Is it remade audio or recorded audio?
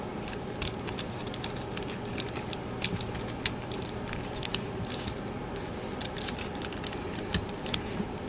recorded